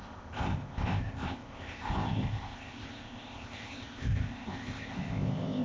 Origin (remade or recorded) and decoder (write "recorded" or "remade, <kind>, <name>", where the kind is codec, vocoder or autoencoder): remade, codec, ZipCodec